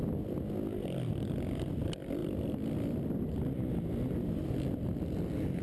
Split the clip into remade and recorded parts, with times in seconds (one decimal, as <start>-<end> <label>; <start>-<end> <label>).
0.0-5.6 recorded